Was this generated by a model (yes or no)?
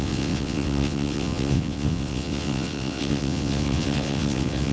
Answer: yes